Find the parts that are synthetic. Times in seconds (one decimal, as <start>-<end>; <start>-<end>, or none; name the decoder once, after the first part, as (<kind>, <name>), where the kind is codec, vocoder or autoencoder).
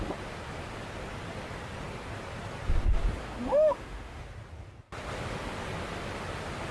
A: 3.2-4.2 (autoencoder, DAC-VAE)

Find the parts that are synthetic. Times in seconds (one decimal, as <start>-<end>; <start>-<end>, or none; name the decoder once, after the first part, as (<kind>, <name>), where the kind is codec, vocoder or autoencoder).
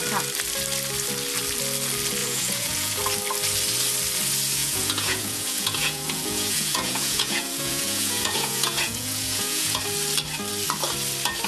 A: 2.2-3.0 (vocoder, Vocos); 4.6-9.8